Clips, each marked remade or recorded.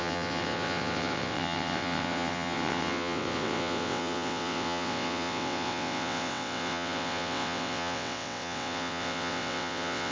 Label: remade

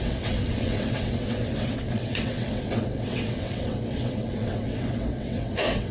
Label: remade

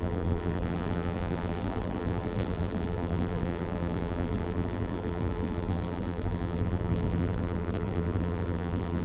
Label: remade